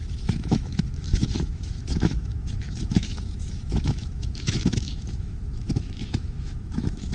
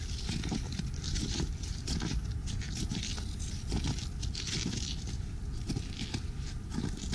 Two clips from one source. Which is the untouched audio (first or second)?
second